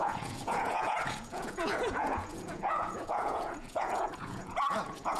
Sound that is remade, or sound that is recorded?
remade